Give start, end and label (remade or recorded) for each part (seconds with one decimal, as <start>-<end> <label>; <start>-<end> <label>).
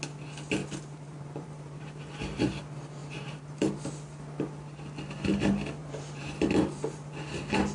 0.0-0.6 recorded; 0.6-2.5 remade; 2.5-3.0 recorded; 3.0-3.7 remade; 3.7-5.8 recorded; 5.8-7.2 remade; 7.2-7.7 recorded